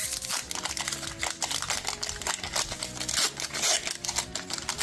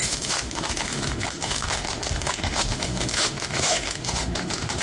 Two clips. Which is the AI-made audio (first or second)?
second